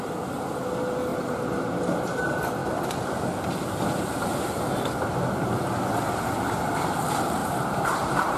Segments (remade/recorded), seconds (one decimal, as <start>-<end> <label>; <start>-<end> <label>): 0.0-1.1 recorded; 1.1-2.2 remade; 2.2-7.4 recorded; 7.4-8.4 remade